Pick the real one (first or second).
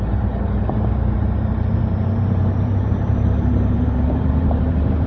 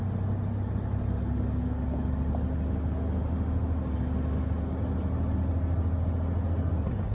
second